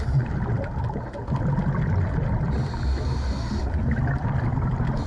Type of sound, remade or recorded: recorded